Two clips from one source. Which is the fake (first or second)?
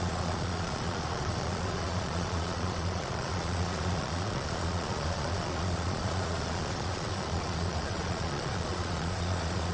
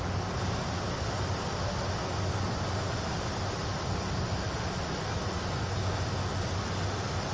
first